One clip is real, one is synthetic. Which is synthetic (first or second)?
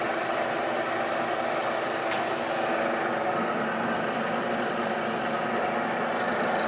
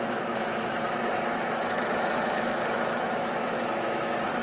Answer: second